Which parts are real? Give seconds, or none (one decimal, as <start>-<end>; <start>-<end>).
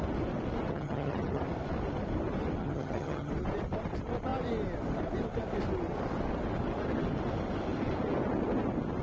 0.0-0.7; 1.4-2.6; 3.3-9.0